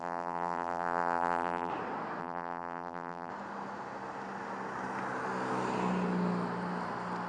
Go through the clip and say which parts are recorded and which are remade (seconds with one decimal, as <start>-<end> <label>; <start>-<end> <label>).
0.0-1.7 remade; 1.7-2.2 recorded; 2.2-3.3 remade; 3.3-7.3 recorded